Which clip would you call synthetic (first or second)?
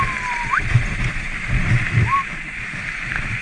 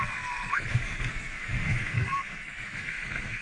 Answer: second